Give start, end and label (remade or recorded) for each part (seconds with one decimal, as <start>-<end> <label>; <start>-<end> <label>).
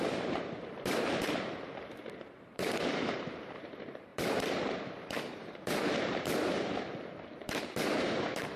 0.0-8.6 remade